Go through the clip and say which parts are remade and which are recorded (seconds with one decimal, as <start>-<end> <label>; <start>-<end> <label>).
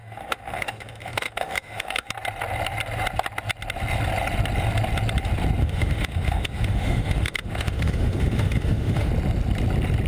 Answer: 0.0-2.1 remade; 2.1-5.6 recorded; 5.6-9.1 remade; 9.1-10.1 recorded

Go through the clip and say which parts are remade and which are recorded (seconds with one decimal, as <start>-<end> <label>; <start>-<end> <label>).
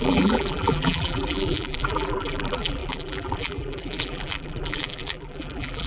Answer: 0.0-5.9 remade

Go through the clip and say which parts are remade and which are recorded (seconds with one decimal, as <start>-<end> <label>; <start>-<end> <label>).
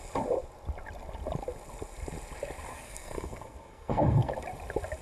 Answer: 0.0-2.7 recorded; 2.7-4.3 remade; 4.3-5.0 recorded